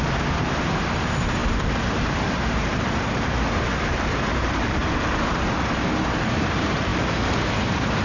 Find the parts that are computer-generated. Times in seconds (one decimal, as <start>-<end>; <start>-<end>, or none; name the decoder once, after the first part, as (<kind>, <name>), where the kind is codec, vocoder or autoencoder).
0.0-4.8 (vocoder, BigVGAN v2); 6.0-8.0

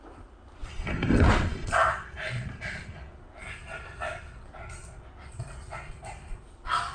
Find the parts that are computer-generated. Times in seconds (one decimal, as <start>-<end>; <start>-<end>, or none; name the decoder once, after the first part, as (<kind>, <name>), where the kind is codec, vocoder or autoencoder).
0.0-1.8 (vocoder, BigVGAN v2); 5.9-6.9

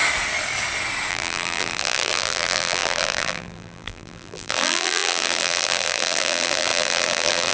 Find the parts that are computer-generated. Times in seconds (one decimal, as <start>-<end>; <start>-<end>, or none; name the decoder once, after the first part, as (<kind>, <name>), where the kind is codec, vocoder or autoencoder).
1.1-7.5 (vocoder, BigVGAN v2)

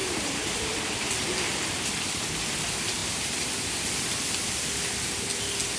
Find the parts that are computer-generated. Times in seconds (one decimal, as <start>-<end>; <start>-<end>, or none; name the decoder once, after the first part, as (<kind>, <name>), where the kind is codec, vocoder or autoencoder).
0.0-2.2 (vocoder, BigVGAN v2); 3.0-4.2

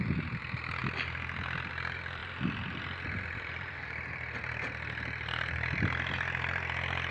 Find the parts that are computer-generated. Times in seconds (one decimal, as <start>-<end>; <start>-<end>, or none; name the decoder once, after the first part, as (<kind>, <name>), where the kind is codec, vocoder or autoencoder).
0.0-0.8 (vocoder, BigVGAN v2); 1.7-7.1

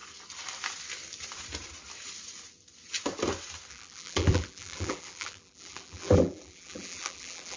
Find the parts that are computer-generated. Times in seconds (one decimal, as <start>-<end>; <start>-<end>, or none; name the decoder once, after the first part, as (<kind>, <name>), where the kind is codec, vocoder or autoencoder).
3.7-7.6 (vocoder, BigVGAN v2)

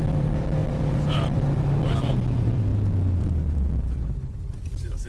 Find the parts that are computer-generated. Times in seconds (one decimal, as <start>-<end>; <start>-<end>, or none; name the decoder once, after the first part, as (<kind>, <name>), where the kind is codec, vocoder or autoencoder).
0.0-2.7 (vocoder, BigVGAN v2); 3.2-5.1

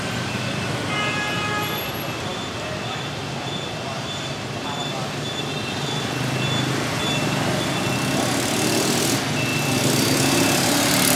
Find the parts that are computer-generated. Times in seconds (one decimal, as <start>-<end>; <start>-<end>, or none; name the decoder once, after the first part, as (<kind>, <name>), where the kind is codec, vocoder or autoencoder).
none